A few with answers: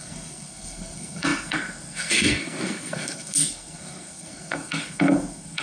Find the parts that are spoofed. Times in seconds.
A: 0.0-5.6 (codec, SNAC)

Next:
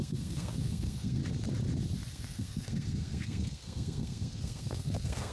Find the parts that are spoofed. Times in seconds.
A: 0.0-1.2 (codec, SNAC); 2.1-5.3

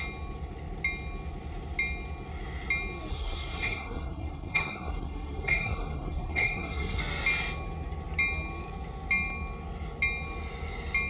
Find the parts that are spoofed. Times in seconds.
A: 3.1-7.0 (codec, SNAC)

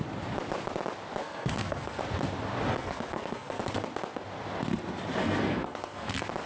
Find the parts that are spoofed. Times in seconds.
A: 1.2-2.0 (codec, SNAC); 2.7-3.6; 5.2-6.1